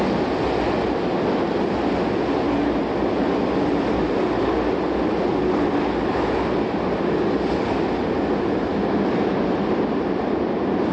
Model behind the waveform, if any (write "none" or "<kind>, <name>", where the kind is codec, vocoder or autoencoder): none